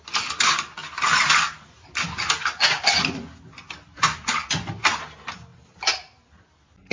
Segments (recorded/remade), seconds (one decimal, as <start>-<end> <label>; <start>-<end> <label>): 0.0-6.9 recorded